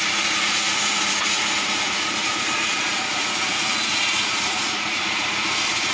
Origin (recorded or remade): remade